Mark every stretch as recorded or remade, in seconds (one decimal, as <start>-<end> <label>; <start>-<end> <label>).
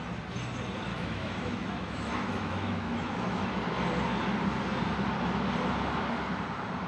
0.0-0.9 recorded; 0.9-3.5 remade; 3.5-6.9 recorded